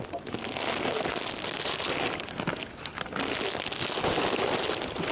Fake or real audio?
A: real